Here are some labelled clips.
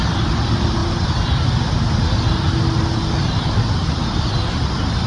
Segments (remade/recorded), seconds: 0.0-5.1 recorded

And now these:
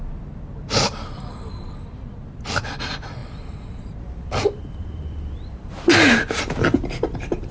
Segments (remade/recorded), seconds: 0.0-3.2 recorded; 3.2-5.7 remade; 5.7-7.5 recorded